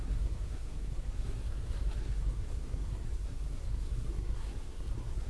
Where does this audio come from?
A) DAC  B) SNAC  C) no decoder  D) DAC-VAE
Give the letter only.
B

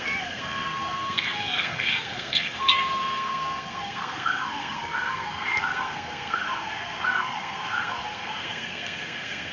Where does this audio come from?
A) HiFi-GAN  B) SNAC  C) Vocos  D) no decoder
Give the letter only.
B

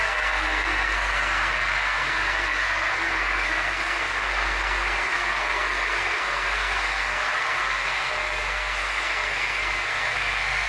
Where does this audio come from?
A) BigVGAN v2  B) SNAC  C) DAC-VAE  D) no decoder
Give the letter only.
B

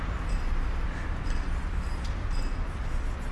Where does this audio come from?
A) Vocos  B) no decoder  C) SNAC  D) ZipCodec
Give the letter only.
B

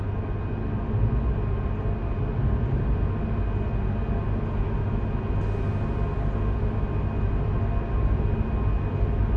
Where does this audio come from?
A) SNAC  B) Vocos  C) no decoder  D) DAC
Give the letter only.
C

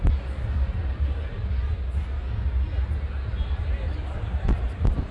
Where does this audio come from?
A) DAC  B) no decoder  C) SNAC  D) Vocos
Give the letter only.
B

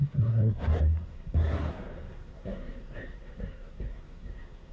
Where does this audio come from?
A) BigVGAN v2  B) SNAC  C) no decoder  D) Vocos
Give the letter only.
B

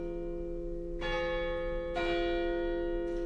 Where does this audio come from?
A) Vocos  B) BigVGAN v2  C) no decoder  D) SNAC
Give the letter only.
C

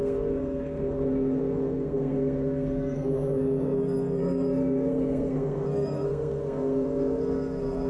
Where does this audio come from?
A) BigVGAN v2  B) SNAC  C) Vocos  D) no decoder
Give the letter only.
B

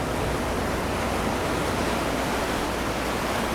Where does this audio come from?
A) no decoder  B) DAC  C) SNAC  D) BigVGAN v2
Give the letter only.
A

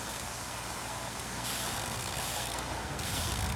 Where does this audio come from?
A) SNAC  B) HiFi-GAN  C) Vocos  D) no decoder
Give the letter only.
A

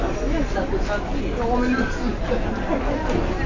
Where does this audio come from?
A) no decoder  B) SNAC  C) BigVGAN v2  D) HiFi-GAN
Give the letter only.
A